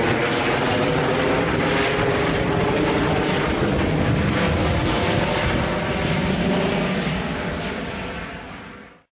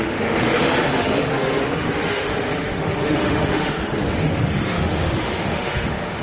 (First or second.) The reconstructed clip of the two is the second